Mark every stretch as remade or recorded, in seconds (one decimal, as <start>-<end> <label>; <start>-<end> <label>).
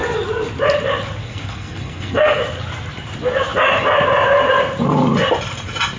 0.0-1.2 recorded; 1.2-2.4 remade; 2.4-6.0 recorded